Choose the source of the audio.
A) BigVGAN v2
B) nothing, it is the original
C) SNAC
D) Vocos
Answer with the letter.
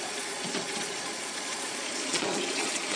D